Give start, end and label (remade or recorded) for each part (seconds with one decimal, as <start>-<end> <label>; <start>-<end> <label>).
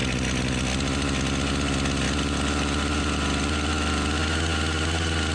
0.0-5.3 recorded